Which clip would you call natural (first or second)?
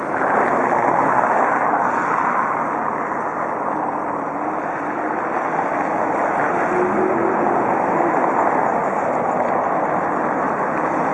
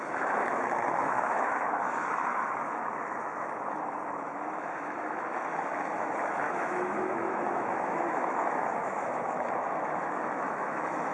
first